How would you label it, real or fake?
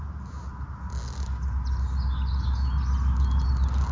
real